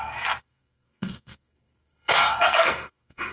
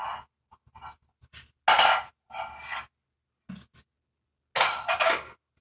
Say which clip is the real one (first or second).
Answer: second